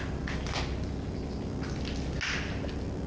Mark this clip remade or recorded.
recorded